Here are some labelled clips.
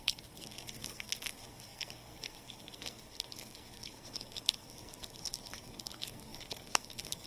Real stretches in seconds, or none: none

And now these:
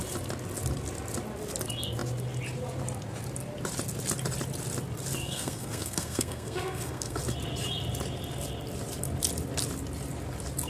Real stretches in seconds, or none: 0.0-5.2; 7.2-10.7

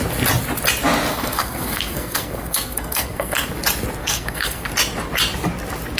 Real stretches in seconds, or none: 0.0-1.1; 3.5-4.0; 4.7-6.0